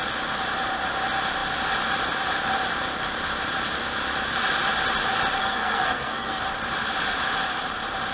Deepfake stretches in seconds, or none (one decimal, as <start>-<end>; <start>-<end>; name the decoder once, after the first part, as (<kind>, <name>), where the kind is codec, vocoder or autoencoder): 5.4-6.4 (codec, SNAC)